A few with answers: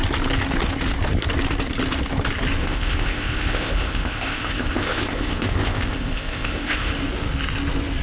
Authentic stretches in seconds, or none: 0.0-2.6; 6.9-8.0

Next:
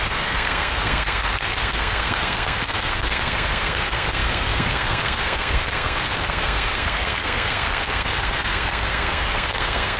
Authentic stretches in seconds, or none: none

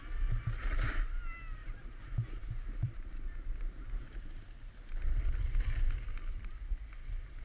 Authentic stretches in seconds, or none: 0.0-0.6; 1.7-2.4; 5.6-7.4

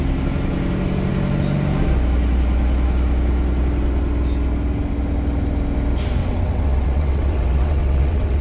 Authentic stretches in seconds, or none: 0.0-6.2

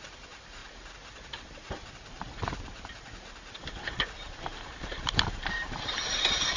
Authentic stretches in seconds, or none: 0.6-4.2

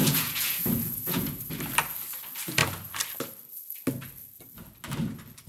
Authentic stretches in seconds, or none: 1.5-5.5